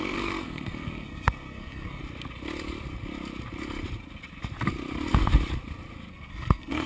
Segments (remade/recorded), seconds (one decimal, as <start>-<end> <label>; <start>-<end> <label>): 0.0-2.0 remade; 2.0-6.1 recorded; 6.1-6.9 remade